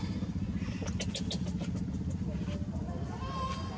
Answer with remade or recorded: recorded